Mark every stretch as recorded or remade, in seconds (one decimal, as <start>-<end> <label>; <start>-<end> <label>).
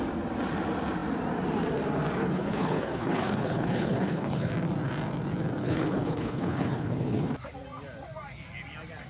0.0-2.2 recorded; 2.2-4.5 remade; 4.5-5.6 recorded; 5.6-7.3 remade; 7.3-9.1 recorded